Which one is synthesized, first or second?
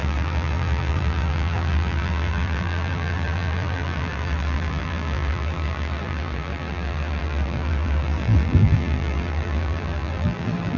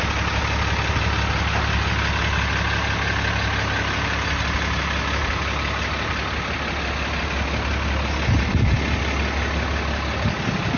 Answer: first